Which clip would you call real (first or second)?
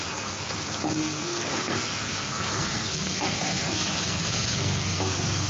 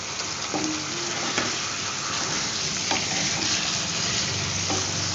second